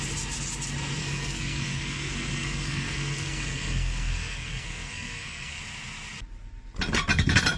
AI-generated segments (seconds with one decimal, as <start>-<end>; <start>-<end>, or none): 1.0-5.6